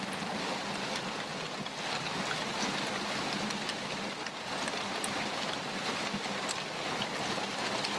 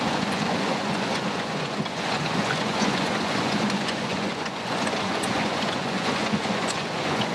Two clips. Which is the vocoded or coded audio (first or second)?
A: second